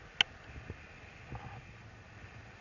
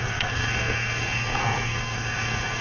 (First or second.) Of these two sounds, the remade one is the second